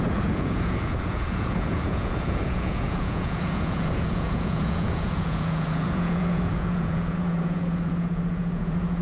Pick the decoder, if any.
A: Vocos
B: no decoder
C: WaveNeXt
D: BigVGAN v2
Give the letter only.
A